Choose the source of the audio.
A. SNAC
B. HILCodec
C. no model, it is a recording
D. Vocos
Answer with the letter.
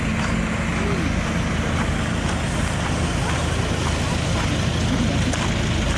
C